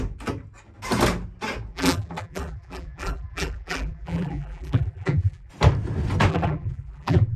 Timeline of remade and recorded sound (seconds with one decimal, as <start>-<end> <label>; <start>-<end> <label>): 0.0-1.7 recorded; 1.7-5.5 remade; 5.5-6.3 recorded; 6.3-7.4 remade